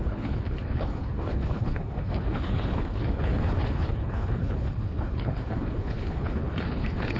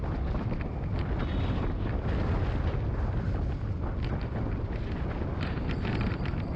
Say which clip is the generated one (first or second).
first